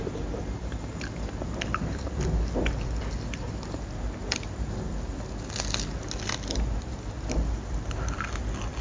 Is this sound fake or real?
real